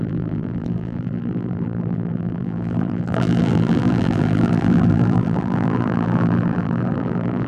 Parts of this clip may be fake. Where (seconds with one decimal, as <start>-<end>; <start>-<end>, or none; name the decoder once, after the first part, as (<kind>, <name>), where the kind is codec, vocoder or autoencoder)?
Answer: 0.0-7.5 (vocoder, BigVGAN v2)